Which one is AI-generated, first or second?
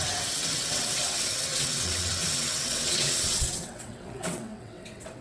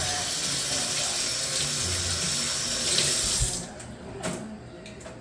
first